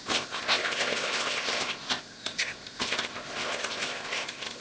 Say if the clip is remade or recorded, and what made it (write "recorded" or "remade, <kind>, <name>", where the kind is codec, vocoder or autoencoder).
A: remade, codec, ZipCodec